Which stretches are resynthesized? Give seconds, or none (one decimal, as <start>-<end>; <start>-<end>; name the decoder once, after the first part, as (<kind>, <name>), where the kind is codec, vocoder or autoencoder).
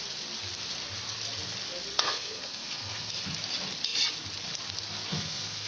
1.9-3.1 (codec, SNAC); 5.1-5.7